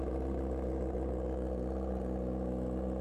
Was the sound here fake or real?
real